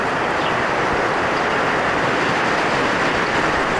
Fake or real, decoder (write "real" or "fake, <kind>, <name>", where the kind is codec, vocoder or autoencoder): real